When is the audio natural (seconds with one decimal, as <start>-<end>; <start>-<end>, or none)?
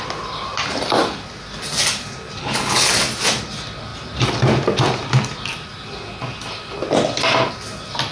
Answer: 0.0-2.4; 2.9-8.1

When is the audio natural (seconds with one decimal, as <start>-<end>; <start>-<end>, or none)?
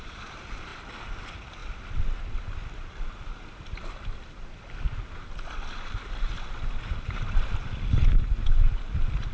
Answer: 0.0-9.3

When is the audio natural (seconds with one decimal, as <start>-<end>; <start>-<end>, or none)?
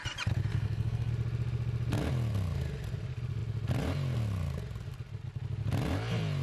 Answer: 0.0-0.5; 1.1-6.4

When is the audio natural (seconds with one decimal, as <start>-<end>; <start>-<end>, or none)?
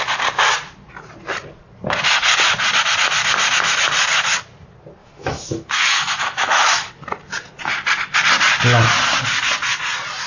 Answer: 0.0-5.0; 6.9-10.3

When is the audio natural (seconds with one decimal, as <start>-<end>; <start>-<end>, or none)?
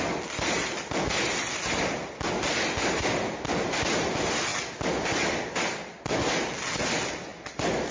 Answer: 0.0-7.3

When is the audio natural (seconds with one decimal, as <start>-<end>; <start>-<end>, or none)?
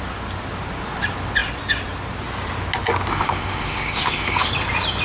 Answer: 0.0-3.1; 4.5-5.0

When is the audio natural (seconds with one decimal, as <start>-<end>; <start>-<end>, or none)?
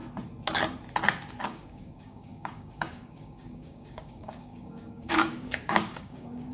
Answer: 0.0-1.4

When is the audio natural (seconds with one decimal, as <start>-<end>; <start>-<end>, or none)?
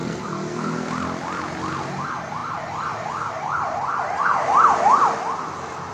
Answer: 0.9-5.9